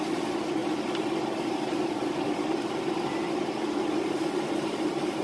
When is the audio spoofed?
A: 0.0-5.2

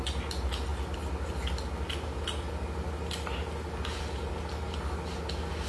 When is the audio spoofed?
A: none

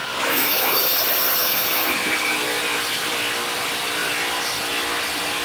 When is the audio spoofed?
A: 0.0-0.8; 1.4-1.9